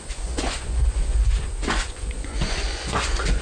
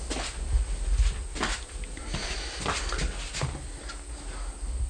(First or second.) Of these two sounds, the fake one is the first